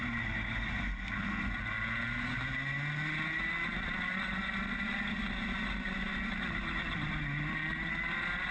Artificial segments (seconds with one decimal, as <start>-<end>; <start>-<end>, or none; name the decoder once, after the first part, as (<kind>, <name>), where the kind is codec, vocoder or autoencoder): none